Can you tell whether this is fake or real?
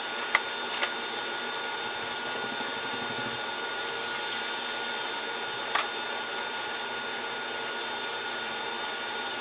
real